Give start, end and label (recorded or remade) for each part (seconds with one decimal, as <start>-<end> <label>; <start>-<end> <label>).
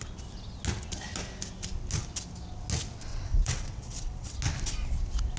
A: 0.0-3.1 recorded; 3.1-4.4 remade; 4.4-5.4 recorded